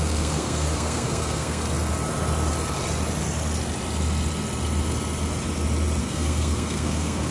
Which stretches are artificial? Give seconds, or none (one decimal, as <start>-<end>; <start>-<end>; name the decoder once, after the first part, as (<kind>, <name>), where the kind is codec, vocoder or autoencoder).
0.0-1.6 (codec, SNAC); 6.0-7.3